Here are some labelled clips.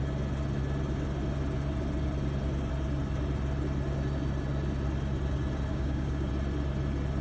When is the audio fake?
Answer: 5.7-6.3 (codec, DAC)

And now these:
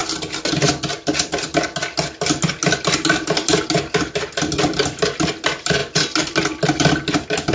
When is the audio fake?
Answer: 5.8-6.3 (vocoder, BigVGAN v2)